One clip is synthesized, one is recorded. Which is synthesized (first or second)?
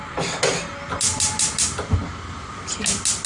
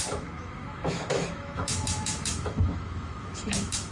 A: second